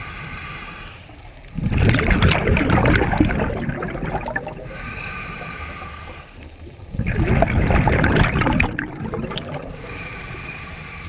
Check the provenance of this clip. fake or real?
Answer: real